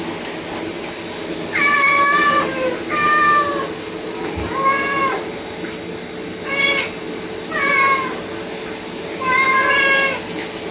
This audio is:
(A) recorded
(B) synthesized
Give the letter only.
A